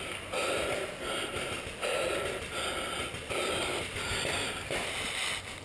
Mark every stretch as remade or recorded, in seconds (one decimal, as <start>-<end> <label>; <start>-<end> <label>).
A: 0.0-5.6 recorded